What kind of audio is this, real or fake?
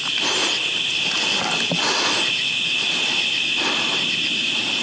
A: real